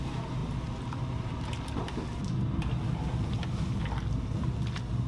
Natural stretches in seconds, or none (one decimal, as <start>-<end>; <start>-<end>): 0.0-5.1